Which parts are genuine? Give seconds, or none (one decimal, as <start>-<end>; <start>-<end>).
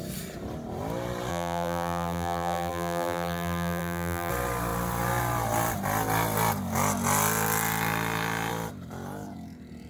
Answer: 0.0-1.3; 4.3-9.9